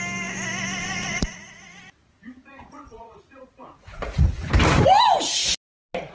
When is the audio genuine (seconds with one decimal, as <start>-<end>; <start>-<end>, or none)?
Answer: 0.0-0.8; 4.5-6.1